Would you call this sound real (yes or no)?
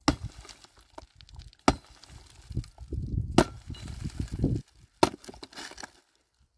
yes